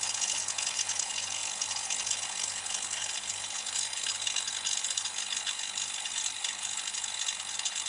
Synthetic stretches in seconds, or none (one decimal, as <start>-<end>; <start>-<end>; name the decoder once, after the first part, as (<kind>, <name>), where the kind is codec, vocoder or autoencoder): 0.0-7.9 (codec, HILCodec)